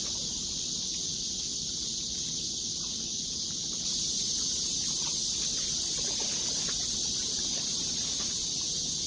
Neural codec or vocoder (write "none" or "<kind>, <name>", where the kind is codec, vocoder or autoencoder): none